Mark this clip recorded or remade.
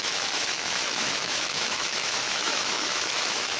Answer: remade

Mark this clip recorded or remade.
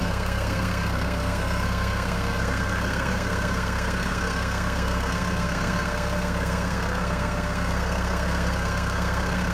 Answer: remade